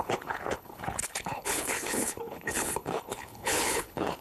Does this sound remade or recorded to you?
remade